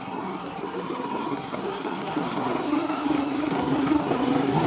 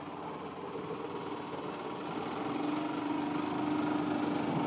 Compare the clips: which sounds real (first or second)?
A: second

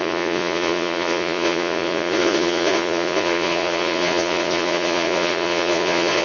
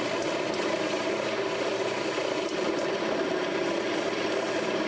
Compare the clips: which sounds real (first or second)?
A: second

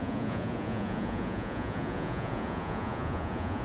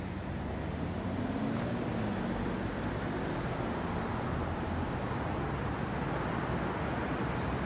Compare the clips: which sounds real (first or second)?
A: second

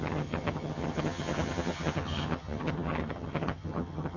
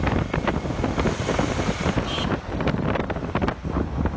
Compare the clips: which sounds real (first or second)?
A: second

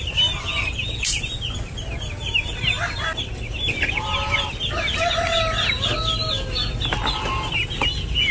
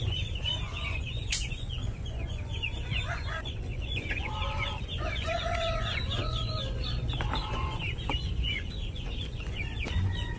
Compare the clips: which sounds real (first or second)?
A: first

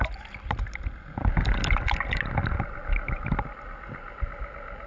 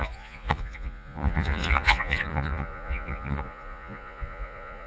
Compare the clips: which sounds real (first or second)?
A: first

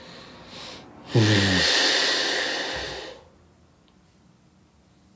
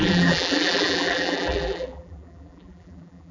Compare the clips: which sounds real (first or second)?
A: first